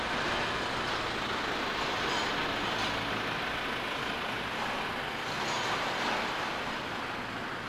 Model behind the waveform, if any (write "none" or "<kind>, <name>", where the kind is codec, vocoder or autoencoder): none